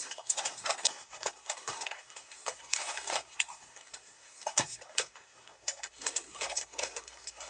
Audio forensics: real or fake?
fake